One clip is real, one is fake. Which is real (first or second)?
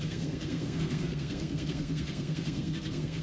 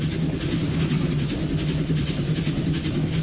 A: second